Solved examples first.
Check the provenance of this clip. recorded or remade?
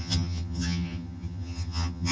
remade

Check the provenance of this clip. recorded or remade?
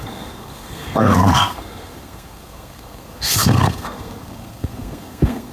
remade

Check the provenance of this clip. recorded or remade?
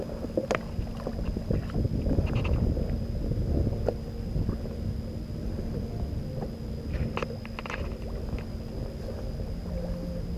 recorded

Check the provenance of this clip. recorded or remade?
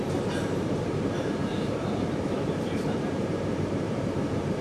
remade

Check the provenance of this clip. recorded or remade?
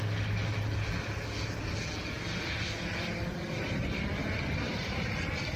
recorded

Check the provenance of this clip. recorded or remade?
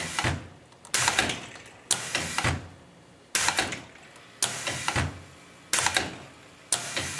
recorded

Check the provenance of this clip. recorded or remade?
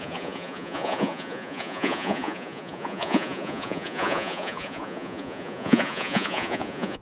remade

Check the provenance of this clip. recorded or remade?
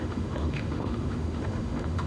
remade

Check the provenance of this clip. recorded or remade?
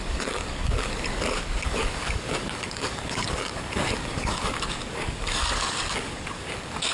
remade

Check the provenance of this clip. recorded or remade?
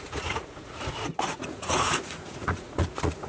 remade